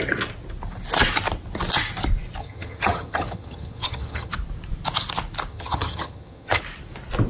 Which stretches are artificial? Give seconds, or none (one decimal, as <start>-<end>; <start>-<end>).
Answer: 2.4-4.3; 5.5-6.6